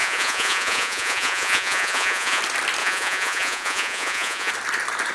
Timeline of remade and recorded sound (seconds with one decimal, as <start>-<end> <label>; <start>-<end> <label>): 0.0-2.4 remade; 2.4-2.8 recorded; 2.8-4.5 remade; 4.5-5.1 recorded